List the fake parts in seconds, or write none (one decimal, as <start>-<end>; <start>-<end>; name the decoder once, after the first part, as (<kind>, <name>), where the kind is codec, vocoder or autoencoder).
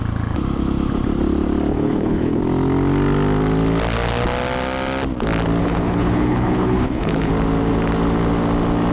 1.7-2.4 (codec, HILCodec); 5.6-7.3